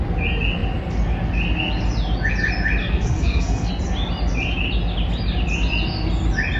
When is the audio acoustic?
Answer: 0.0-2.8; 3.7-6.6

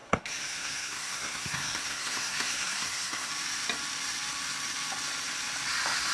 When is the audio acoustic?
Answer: 3.3-6.1

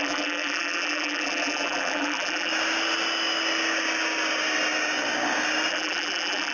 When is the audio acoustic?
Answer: 2.5-5.7